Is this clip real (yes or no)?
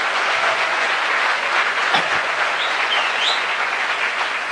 no